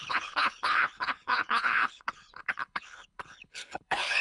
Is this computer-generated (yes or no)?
yes